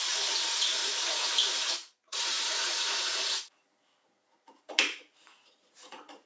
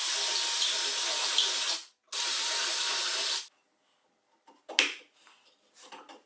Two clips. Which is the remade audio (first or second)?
first